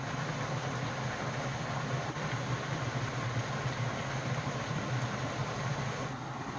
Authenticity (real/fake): real